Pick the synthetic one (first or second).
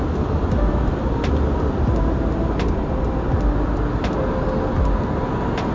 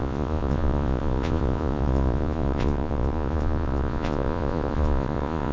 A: second